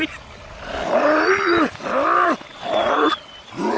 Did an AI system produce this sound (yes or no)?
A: no